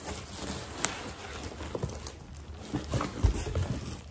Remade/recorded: recorded